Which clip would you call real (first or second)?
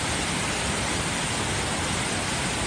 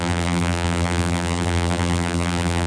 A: first